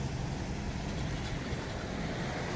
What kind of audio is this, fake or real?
real